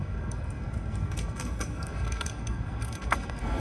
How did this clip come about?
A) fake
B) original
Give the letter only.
A